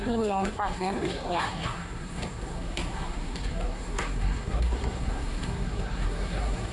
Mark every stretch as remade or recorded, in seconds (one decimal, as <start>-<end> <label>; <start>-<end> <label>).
0.0-6.7 remade